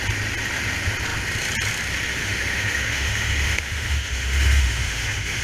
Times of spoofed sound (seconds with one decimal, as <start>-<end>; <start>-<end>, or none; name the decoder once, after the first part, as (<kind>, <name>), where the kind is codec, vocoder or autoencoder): 2.2-5.4 (autoencoder, DAC-VAE)